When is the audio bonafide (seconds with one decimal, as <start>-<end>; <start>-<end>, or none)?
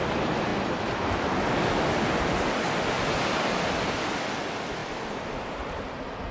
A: 0.0-6.3